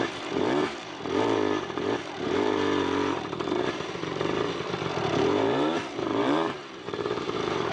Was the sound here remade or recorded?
remade